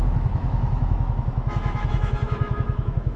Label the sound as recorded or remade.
remade